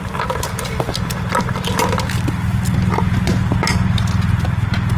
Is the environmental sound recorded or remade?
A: recorded